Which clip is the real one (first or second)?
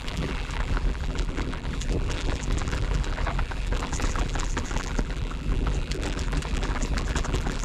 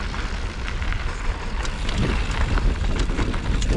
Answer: second